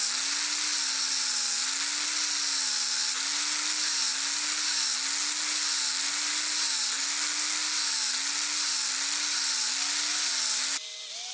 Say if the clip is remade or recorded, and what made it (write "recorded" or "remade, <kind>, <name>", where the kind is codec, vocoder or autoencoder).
recorded